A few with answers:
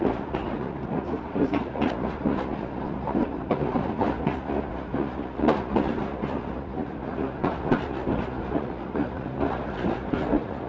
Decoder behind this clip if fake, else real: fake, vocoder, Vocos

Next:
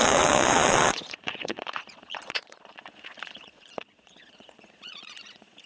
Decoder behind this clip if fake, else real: fake, vocoder, Vocos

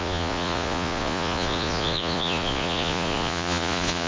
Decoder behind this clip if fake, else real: fake, vocoder, Vocos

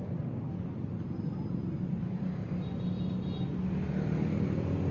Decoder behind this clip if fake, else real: real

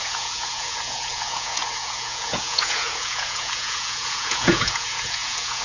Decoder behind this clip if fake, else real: fake, vocoder, Vocos